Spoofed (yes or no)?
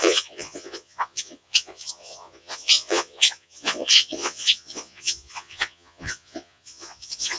yes